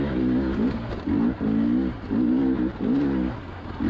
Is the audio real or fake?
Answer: real